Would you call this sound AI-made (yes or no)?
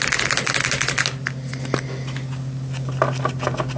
no